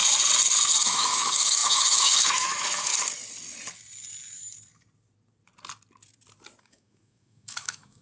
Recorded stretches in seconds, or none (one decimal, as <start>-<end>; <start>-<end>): 0.0-0.8; 2.9-6.6